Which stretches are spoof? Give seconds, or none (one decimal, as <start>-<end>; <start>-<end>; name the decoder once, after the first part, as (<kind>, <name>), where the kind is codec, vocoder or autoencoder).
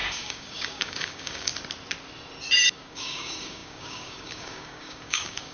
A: 0.0-1.5 (codec, DAC); 2.7-5.5